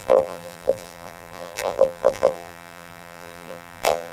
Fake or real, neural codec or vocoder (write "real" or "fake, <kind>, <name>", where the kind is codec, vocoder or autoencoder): fake, vocoder, BigVGAN v2